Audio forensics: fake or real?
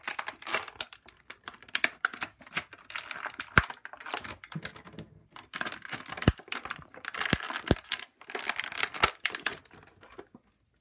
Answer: real